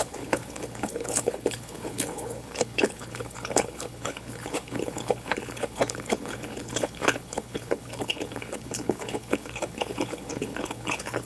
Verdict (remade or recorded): remade